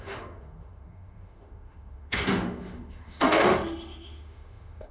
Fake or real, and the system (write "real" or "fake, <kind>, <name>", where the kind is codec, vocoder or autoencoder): fake, autoencoder, DAC-VAE